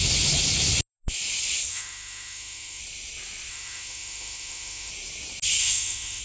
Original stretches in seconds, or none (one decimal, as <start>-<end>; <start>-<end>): 0.0-1.7; 2.8-3.5; 4.9-5.6